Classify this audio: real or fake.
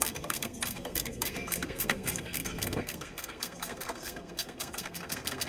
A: fake